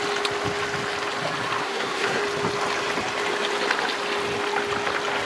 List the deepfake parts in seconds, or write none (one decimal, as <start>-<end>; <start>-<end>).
1.6-2.2